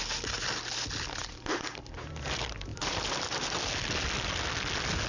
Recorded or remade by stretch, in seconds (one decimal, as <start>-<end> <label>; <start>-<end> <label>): 0.0-1.2 recorded; 1.2-2.1 remade; 2.1-2.7 recorded; 2.7-3.6 remade; 3.6-5.1 recorded